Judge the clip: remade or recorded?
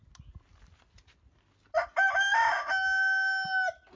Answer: recorded